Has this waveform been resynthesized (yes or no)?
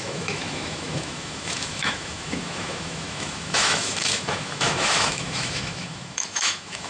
yes